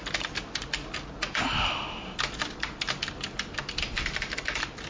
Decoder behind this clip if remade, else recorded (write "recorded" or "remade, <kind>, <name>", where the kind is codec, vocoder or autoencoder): recorded